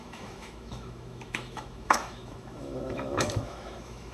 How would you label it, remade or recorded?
remade